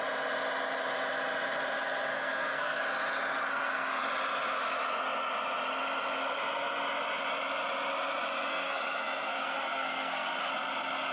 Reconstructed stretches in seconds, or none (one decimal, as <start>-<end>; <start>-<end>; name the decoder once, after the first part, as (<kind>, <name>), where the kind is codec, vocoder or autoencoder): 2.1-2.8 (codec, SNAC); 3.5-4.0; 8.5-10.5